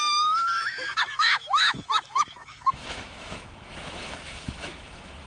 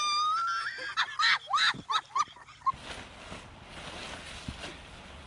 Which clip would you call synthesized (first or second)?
first